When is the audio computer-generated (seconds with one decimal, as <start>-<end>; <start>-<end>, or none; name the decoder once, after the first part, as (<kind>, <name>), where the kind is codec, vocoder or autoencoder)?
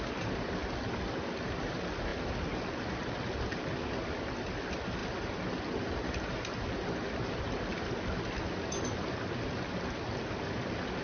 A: none